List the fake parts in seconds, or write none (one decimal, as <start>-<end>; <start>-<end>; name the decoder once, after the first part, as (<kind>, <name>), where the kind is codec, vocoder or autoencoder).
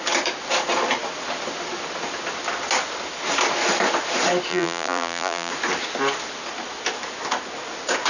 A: 4.5-5.5 (vocoder, BigVGAN v2)